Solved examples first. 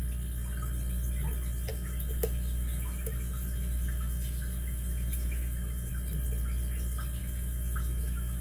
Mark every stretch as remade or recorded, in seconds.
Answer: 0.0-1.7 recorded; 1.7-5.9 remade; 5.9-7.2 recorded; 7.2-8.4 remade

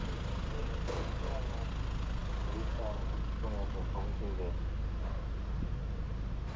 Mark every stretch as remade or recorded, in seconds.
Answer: 0.0-6.6 recorded

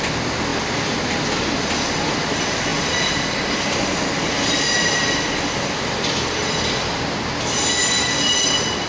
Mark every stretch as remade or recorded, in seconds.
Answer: 0.0-8.9 recorded

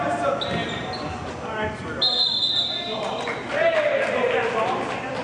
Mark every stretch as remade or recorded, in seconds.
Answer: 0.0-5.2 recorded

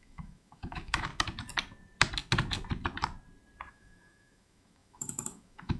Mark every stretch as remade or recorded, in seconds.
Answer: 0.0-1.1 remade; 1.1-3.7 recorded; 3.7-5.8 remade

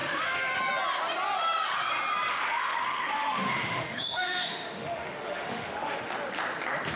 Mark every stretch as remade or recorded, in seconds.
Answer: 0.0-0.6 remade; 0.6-2.3 recorded; 2.3-6.1 remade; 6.1-7.0 recorded